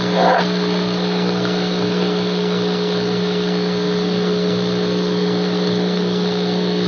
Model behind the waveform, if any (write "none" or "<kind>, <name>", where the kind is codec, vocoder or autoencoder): codec, SNAC